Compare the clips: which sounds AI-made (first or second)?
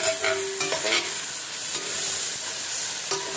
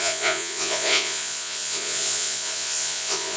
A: second